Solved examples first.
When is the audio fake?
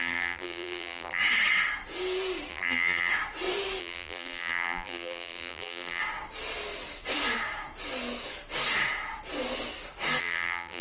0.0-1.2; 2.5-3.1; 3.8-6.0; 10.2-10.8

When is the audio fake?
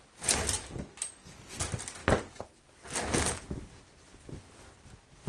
none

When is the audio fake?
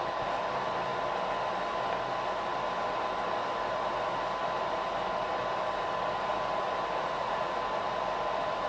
7.0-7.5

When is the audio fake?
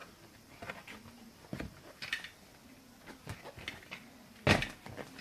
none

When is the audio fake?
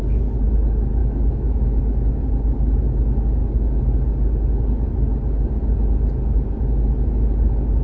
1.0-1.8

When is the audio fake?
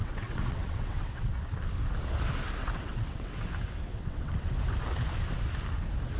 0.0-1.3; 2.6-3.5; 3.9-4.5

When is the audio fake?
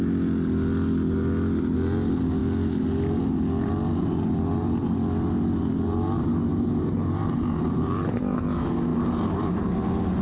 6.5-8.2; 8.9-9.6